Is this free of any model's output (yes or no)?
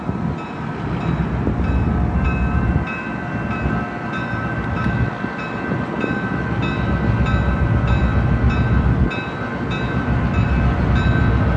yes